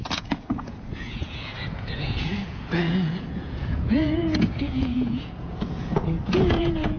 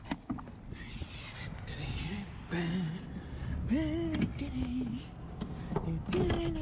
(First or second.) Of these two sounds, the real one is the second